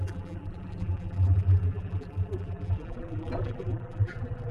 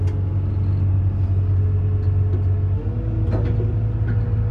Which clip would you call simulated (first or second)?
first